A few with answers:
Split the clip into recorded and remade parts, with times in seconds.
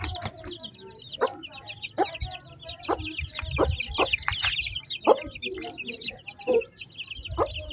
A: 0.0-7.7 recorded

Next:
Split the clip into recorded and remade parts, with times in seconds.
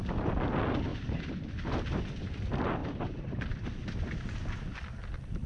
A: 0.0-2.8 recorded; 2.8-3.4 remade; 3.4-5.5 recorded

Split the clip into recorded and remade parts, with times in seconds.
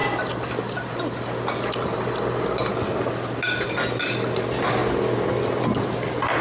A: 0.0-2.7 remade; 2.7-6.4 recorded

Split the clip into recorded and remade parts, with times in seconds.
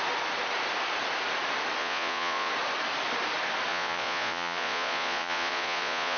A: 0.0-1.8 recorded; 1.8-2.5 remade; 2.5-3.7 recorded; 3.7-6.2 remade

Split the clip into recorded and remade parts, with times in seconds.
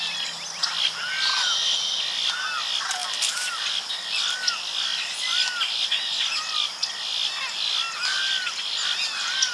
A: 0.0-9.5 recorded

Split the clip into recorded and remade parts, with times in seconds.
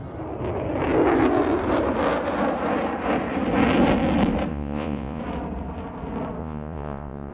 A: 0.0-4.5 recorded; 4.5-5.2 remade; 5.2-6.4 recorded; 6.4-7.3 remade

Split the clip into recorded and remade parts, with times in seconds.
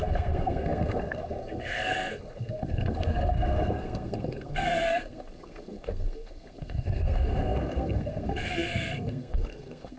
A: 0.0-10.0 remade